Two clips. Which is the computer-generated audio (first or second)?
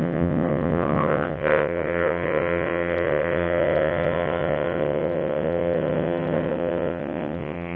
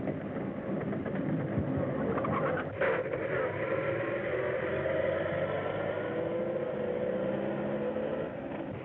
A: first